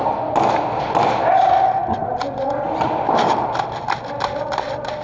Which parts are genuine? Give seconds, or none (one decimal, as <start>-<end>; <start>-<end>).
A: 0.0-5.0